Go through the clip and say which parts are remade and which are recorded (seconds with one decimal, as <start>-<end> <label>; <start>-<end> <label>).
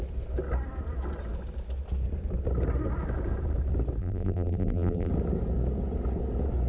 0.0-4.0 recorded; 4.0-5.1 remade; 5.1-6.7 recorded